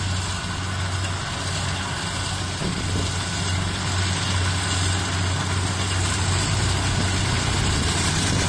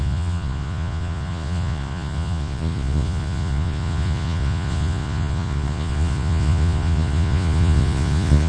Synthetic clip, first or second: second